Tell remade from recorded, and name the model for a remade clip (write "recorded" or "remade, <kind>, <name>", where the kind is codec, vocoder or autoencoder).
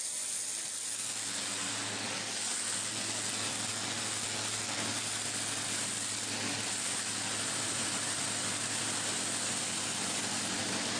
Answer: recorded